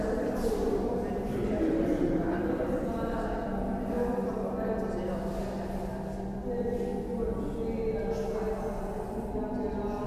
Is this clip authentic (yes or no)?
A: yes